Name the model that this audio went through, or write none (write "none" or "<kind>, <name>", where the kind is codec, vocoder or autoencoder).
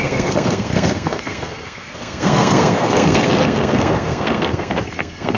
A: codec, SNAC